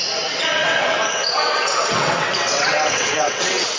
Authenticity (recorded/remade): remade